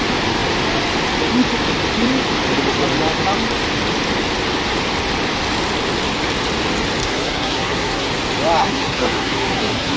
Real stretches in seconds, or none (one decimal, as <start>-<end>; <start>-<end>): 0.0-7.0; 8.1-8.6